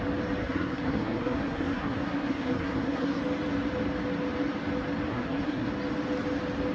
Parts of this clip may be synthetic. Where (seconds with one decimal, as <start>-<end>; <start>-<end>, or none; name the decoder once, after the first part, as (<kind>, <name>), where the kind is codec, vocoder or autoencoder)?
0.4-3.2 (codec, SNAC); 5.1-5.7